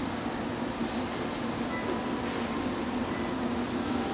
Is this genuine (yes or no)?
yes